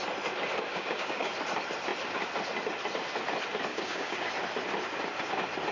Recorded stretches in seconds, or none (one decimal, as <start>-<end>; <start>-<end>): 0.0-0.7; 1.3-3.7; 4.3-5.7